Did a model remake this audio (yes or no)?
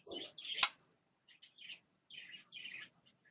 no